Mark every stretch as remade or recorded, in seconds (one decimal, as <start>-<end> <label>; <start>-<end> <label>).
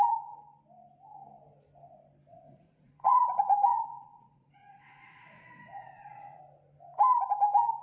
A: 0.0-2.3 recorded; 2.3-6.4 remade; 6.4-7.8 recorded